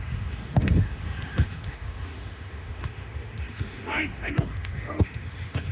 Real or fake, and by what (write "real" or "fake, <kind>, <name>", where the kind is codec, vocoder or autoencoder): fake, autoencoder, DAC-VAE